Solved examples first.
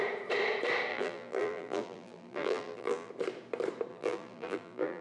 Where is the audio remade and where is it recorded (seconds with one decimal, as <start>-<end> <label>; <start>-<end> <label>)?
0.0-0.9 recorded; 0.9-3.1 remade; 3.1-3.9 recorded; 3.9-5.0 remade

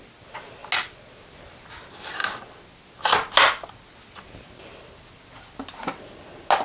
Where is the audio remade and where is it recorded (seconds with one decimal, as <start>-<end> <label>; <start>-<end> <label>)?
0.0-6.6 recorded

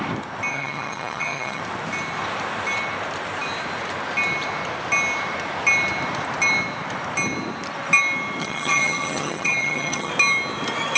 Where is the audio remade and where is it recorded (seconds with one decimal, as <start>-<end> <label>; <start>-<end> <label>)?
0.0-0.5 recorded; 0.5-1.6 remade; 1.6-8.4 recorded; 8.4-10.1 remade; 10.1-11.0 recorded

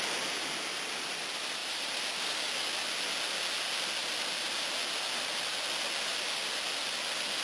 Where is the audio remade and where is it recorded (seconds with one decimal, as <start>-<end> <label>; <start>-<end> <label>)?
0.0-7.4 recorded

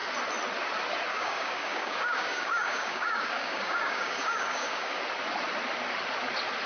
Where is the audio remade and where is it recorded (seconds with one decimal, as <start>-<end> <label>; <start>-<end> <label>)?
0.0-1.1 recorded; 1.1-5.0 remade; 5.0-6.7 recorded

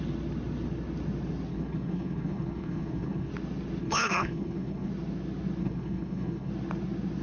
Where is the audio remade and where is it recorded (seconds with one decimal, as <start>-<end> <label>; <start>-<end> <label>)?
0.0-1.5 recorded; 1.5-3.3 remade; 3.3-3.8 recorded; 3.8-4.9 remade; 4.9-5.6 recorded; 5.6-6.5 remade; 6.5-7.2 recorded

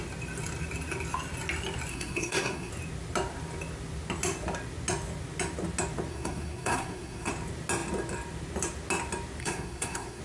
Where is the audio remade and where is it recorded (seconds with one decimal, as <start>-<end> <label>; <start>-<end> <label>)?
0.0-1.9 recorded; 1.9-2.7 remade; 2.7-6.1 recorded; 6.1-7.3 remade; 7.3-9.4 recorded; 9.4-10.2 remade

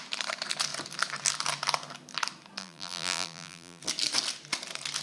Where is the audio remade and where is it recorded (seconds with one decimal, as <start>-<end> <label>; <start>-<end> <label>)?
0.0-2.6 recorded; 2.6-3.8 remade; 3.8-5.0 recorded